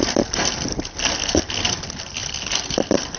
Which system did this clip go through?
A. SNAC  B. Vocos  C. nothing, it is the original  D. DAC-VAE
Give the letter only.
C